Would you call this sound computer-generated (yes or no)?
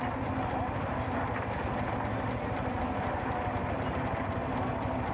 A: no